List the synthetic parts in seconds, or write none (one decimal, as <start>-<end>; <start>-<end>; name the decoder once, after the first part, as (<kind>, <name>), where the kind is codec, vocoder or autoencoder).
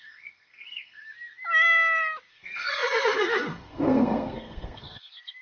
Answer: 0.0-1.0 (codec, SNAC); 2.3-5.4